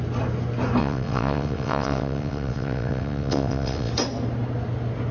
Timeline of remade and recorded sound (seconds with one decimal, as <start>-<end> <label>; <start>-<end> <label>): 0.0-0.8 recorded; 0.8-3.9 remade; 3.9-5.1 recorded